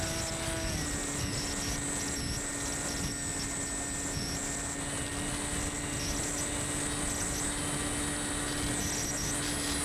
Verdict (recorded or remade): recorded